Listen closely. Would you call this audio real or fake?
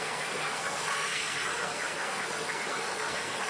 fake